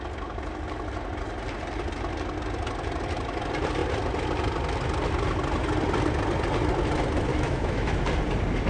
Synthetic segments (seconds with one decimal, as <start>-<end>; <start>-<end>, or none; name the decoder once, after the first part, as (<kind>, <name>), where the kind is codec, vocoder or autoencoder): 7.3-8.0 (autoencoder, DAC-VAE)